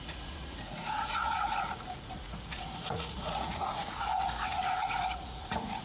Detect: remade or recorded remade